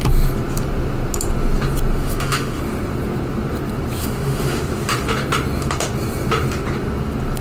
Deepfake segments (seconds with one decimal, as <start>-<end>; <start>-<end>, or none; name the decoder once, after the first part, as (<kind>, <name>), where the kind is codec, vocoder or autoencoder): 1.9-2.6 (autoencoder, DAC-VAE); 4.0-4.6

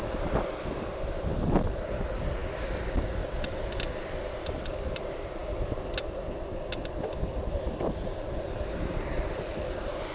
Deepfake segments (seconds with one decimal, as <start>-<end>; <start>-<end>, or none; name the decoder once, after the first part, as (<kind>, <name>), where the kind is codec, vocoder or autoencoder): none

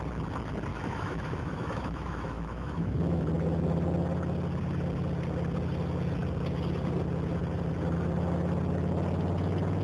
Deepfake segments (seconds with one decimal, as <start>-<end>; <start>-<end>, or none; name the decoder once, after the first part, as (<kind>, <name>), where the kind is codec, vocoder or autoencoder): 0.7-3.2 (autoencoder, DAC-VAE)

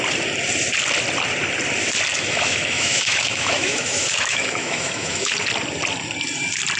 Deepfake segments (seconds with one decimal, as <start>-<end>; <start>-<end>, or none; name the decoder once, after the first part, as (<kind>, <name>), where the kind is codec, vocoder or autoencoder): 2.1-5.3 (autoencoder, DAC-VAE)

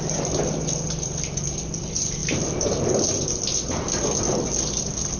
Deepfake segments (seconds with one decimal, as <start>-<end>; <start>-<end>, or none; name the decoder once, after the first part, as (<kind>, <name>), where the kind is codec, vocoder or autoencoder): none

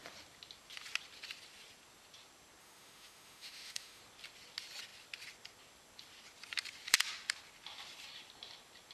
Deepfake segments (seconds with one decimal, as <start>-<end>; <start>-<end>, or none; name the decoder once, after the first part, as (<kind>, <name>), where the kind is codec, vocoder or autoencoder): 2.6-4.0 (autoencoder, DAC-VAE)